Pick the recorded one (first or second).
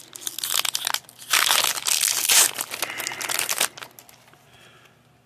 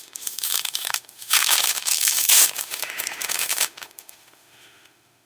first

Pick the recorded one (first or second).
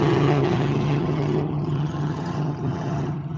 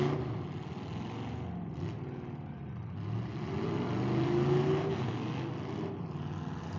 second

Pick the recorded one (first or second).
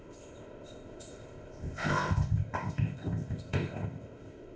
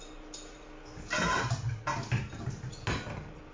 second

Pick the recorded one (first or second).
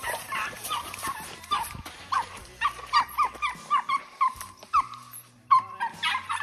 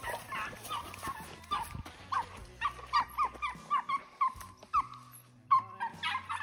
second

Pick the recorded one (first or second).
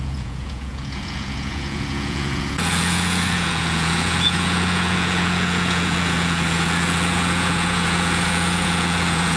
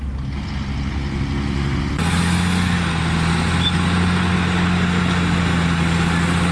second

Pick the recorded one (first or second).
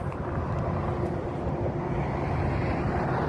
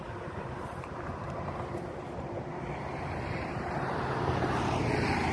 first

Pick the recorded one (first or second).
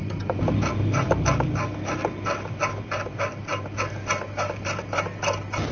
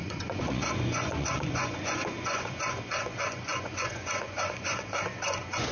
first